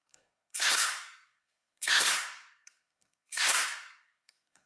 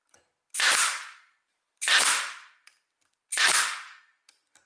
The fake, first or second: first